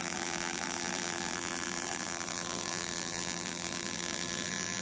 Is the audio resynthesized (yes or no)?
yes